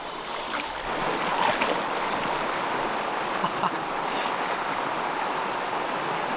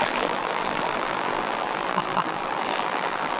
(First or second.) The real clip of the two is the first